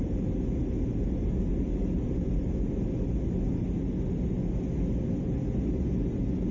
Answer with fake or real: real